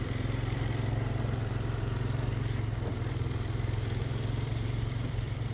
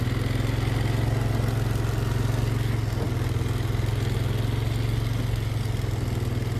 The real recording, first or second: second